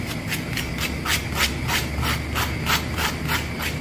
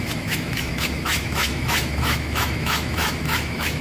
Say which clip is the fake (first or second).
second